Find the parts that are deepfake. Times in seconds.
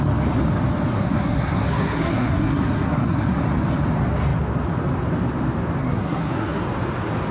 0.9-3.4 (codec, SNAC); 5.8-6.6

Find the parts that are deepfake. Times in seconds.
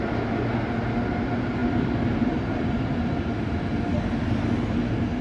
none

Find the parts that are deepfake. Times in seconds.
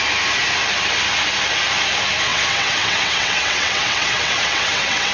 2.3-5.1 (vocoder, WaveNeXt)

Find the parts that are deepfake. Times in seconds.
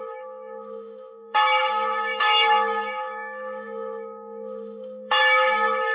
0.0-5.9 (autoencoder, DAC-VAE)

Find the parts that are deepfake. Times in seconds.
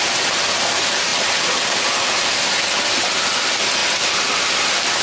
3.8-5.0 (vocoder, BigVGAN v2)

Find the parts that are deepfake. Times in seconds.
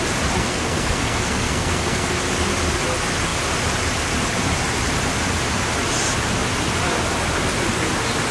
0.4-2.1 (codec, SNAC)